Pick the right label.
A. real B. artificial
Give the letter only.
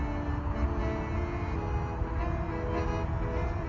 A